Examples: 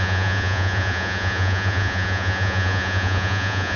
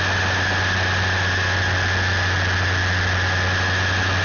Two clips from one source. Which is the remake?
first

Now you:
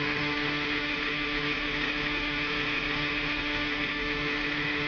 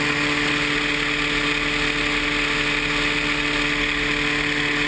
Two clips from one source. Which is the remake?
first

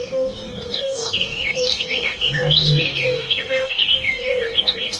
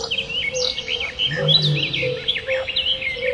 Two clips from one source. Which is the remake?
first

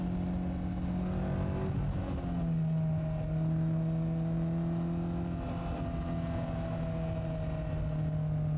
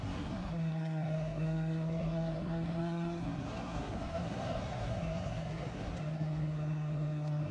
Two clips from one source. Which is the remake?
second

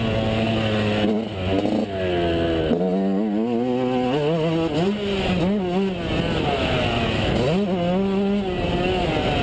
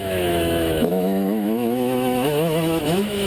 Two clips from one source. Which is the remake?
second